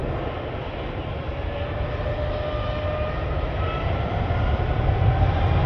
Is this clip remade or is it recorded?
recorded